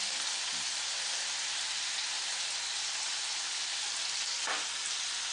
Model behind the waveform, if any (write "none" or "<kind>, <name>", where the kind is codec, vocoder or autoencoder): none